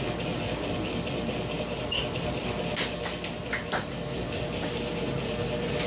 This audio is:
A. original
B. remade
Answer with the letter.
A